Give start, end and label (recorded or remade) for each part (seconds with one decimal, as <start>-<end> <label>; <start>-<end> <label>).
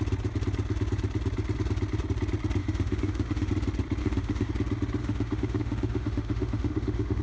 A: 0.0-2.6 recorded; 2.6-3.5 remade; 3.5-4.0 recorded; 4.0-4.5 remade; 4.5-5.0 recorded; 5.0-7.2 remade